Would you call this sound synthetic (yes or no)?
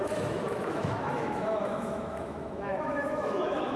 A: yes